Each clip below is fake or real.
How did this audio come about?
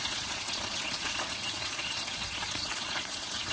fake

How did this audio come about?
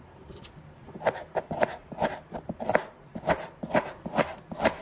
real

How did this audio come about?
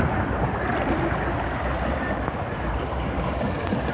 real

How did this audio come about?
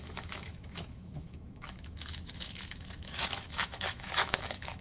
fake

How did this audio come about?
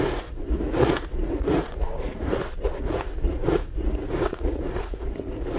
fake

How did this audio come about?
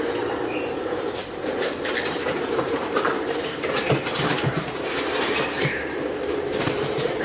fake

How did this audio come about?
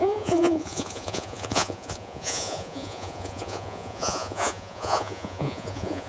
fake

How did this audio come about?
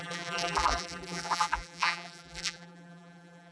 fake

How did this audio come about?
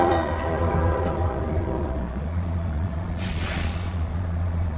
fake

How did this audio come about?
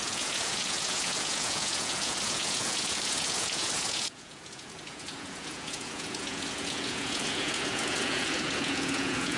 fake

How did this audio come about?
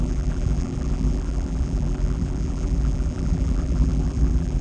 fake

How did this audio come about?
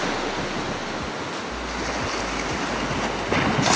real